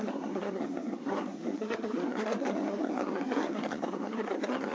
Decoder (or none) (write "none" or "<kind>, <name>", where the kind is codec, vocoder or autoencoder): codec, SNAC